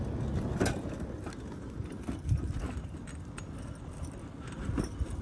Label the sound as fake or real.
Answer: real